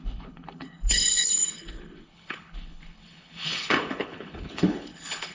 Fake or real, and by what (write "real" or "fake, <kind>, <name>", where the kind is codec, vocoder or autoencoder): fake, codec, HILCodec